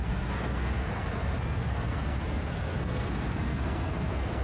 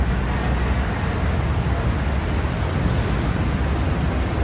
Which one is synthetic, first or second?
first